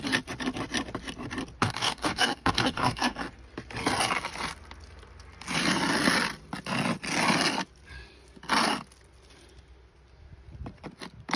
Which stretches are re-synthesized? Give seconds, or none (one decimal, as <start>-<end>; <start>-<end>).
1.6-3.3